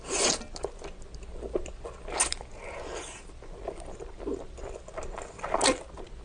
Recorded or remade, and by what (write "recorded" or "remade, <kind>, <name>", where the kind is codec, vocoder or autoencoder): recorded